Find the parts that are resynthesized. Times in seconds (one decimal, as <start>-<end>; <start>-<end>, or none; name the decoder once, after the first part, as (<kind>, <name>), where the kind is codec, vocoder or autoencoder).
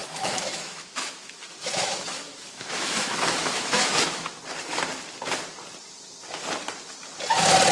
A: 0.0-4.4 (autoencoder, DAC-VAE)